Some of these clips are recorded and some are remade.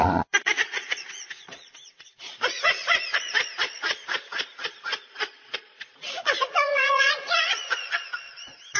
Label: remade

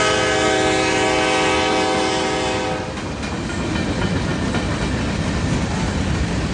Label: recorded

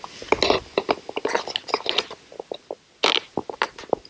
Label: recorded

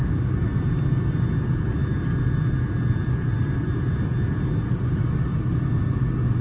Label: recorded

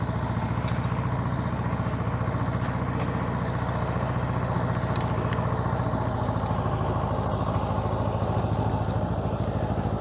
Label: recorded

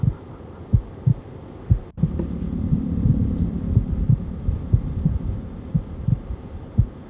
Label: recorded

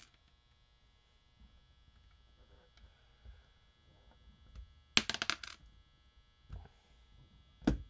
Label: recorded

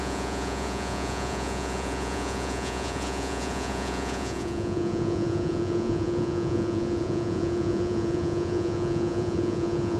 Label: remade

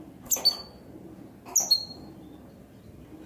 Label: recorded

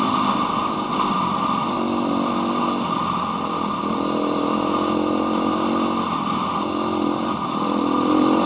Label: recorded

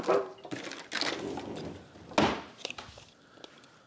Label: recorded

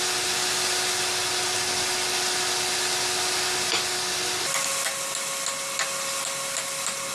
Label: recorded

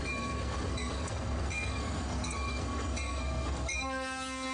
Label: remade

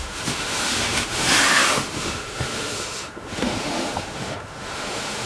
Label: remade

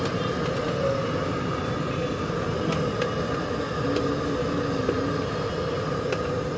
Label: recorded